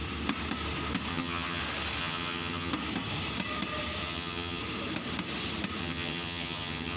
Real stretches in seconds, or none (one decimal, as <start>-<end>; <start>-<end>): 0.0-1.1; 1.6-2.0; 2.7-4.0; 4.6-5.8